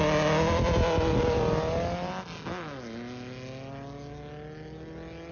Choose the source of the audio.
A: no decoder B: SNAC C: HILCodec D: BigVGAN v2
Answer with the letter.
A